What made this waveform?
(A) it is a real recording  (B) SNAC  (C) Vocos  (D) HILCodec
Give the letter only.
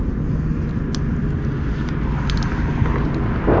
A